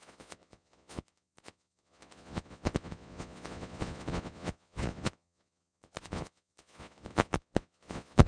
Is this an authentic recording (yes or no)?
no